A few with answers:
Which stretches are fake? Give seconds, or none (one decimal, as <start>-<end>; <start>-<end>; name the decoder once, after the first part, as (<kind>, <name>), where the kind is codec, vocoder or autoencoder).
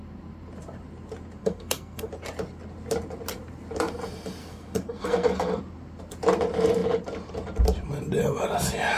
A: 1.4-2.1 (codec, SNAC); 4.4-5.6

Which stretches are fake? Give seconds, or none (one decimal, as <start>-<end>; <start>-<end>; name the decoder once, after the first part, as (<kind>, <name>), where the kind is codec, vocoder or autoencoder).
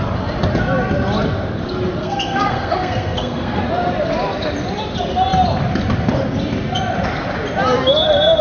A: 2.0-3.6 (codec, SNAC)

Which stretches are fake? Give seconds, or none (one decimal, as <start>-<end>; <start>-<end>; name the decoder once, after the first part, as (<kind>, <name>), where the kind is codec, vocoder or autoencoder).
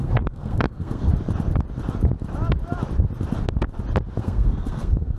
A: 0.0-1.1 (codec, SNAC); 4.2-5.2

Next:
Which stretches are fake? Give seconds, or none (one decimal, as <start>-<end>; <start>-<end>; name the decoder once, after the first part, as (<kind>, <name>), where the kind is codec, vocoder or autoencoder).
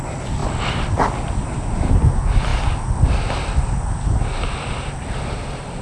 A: none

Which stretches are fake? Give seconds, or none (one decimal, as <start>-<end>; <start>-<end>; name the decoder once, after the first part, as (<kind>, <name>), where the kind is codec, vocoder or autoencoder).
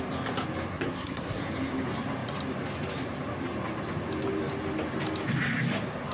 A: 0.7-1.4 (codec, SNAC)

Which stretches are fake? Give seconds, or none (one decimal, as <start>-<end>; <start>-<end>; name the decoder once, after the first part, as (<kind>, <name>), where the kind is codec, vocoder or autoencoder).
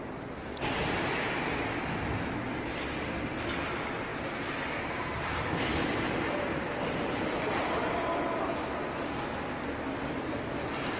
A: none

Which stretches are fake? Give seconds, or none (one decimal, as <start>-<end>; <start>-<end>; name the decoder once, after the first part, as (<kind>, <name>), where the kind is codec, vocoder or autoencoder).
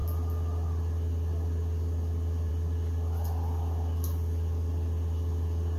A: none